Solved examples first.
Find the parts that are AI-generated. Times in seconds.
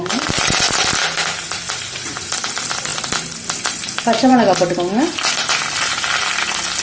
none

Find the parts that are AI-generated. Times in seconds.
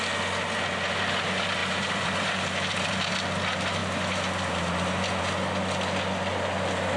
1.6-3.1 (vocoder, BigVGAN v2)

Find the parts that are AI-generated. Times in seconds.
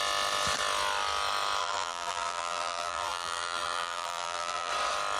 1.6-4.7 (vocoder, BigVGAN v2)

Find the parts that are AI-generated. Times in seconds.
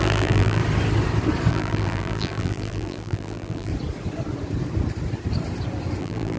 0.0-0.6 (vocoder, BigVGAN v2); 1.5-3.7; 6.0-6.4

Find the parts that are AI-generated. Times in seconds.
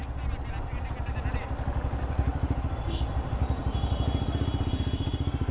2.3-5.5 (vocoder, BigVGAN v2)